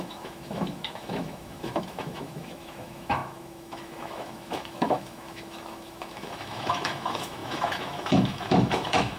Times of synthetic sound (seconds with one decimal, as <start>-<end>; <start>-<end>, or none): 0.0-9.2